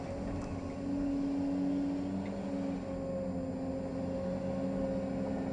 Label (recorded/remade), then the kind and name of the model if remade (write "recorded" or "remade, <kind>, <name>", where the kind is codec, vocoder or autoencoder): recorded